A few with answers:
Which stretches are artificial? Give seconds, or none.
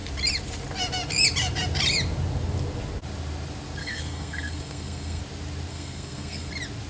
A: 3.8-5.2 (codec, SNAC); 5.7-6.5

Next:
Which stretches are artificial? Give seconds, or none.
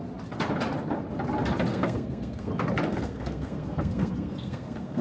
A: 1.7-2.5 (codec, SNAC); 2.9-5.0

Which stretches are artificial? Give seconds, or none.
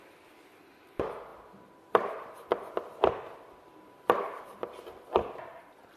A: none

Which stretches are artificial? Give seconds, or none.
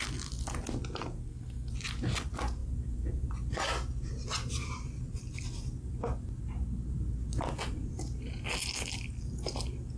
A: 1.2-1.7 (codec, SNAC)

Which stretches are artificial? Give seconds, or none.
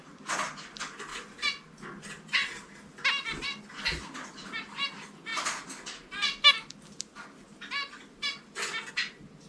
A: none